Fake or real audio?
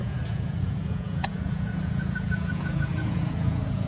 fake